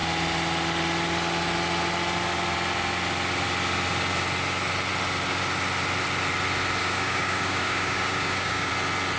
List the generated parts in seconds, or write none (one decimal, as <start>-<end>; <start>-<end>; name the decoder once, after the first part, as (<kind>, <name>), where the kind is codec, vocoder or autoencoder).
6.8-8.7 (codec, DAC)